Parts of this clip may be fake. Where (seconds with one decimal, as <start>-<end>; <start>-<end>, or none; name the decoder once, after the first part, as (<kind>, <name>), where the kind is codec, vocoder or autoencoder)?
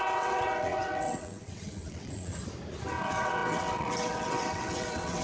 0.0-2.3 (vocoder, WaveNeXt); 3.0-5.2